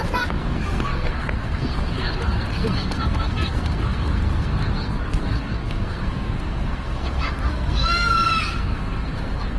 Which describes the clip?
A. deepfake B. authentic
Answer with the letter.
A